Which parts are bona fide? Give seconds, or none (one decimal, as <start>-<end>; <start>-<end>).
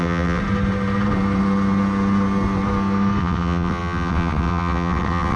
0.4-3.2